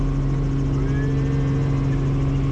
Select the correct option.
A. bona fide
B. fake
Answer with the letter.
A